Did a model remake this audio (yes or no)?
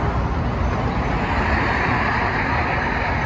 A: no